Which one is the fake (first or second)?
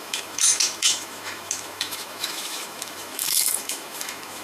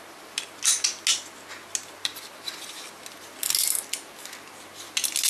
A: first